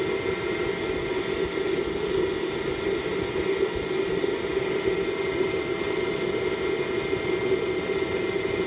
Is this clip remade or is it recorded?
recorded